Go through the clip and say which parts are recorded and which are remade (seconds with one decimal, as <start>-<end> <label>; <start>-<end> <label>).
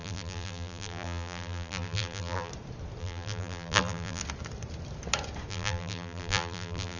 0.0-2.5 remade; 2.5-3.0 recorded; 3.0-4.2 remade; 4.2-5.5 recorded; 5.5-7.0 remade